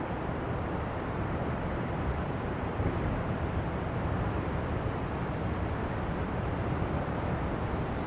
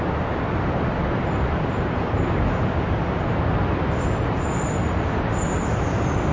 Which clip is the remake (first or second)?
first